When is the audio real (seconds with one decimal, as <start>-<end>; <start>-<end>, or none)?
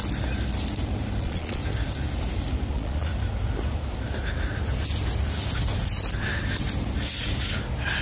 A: 0.0-1.2; 1.6-2.7; 3.1-8.0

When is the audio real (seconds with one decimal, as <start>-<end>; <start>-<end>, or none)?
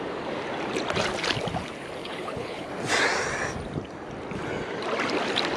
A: 0.0-2.0; 2.7-5.6